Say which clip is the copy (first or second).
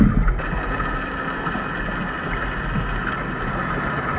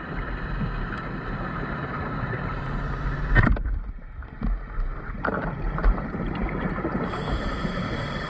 second